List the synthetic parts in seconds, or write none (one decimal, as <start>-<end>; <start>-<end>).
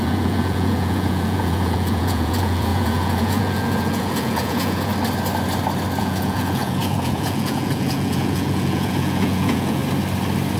0.0-4.9; 6.0-9.8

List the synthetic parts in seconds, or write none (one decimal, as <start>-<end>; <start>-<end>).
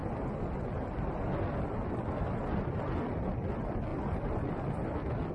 none